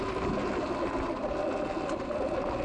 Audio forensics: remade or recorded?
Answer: recorded